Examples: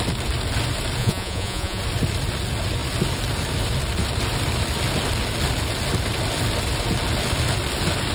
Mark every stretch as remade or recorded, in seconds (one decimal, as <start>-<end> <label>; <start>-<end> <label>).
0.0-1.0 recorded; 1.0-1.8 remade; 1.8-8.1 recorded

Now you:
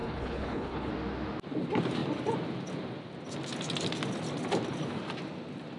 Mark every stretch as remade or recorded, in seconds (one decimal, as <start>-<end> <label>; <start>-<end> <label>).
0.0-0.9 remade; 0.9-5.8 recorded

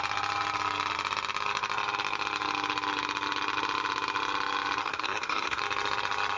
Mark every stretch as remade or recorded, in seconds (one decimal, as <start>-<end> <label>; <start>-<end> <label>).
0.0-4.8 recorded; 4.8-5.6 remade; 5.6-6.4 recorded

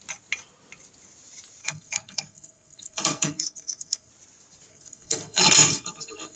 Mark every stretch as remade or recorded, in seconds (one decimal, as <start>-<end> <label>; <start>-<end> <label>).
0.0-1.6 recorded; 1.6-4.1 remade; 4.1-4.7 recorded; 4.7-6.4 remade